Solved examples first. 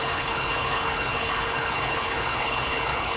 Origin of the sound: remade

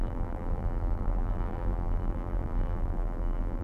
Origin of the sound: remade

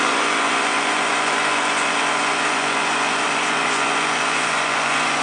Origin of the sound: remade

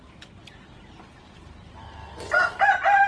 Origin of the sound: recorded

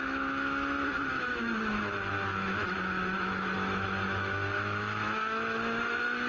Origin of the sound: remade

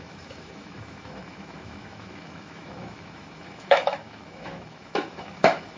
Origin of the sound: remade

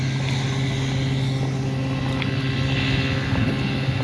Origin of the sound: recorded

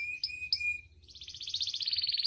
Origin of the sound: recorded